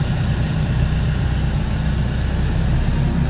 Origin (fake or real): real